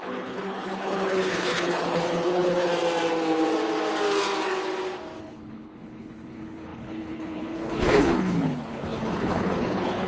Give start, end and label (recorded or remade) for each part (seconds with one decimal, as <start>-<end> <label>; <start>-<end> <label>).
0.0-2.7 remade; 2.7-5.2 recorded; 5.2-10.1 remade